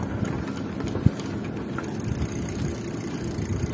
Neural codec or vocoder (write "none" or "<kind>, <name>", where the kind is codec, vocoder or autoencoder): none